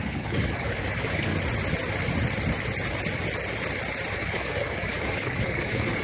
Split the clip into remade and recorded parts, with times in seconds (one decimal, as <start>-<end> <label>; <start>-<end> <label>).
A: 0.0-1.3 remade; 1.3-4.1 recorded; 4.1-6.0 remade